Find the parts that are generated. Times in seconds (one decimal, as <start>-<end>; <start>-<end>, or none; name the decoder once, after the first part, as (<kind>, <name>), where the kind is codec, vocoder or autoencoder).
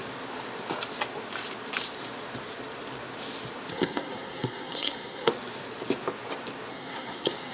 3.7-5.3 (codec, SNAC); 6.7-7.5